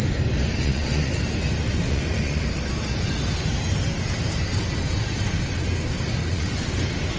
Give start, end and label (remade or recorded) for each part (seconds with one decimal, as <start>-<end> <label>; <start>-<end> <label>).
0.0-0.6 recorded; 0.6-1.1 remade; 1.1-1.7 recorded; 1.7-2.4 remade; 2.4-6.2 recorded; 6.2-6.7 remade; 6.7-7.2 recorded